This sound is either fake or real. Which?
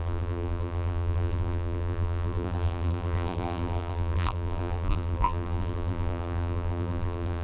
fake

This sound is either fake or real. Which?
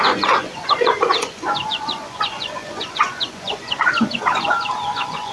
fake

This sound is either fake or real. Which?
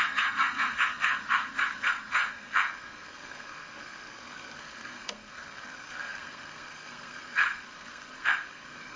fake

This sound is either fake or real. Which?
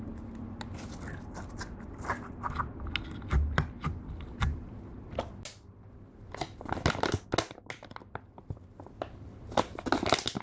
real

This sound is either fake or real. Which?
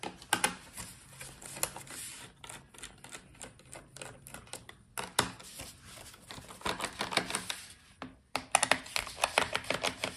real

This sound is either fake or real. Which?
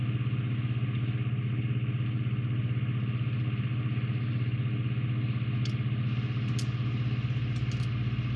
real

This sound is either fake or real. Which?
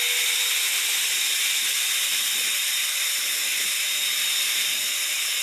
real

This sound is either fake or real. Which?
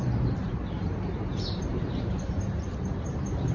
fake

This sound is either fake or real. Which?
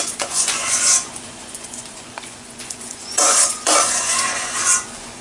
fake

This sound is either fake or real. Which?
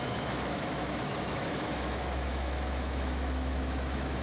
fake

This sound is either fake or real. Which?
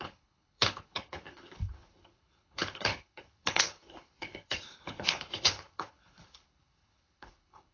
fake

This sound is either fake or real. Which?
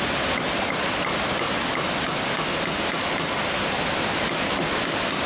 real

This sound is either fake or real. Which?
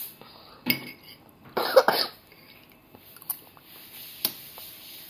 real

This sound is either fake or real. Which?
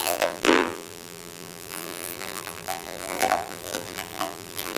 fake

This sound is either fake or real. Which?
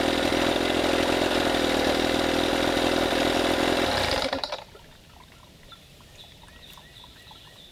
real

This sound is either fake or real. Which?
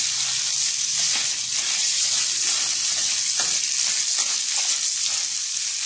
real